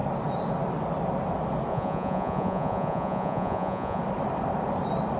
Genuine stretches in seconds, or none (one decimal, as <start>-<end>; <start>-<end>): 0.0-1.7; 4.0-5.2